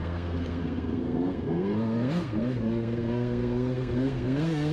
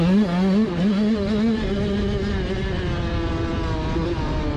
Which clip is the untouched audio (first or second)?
second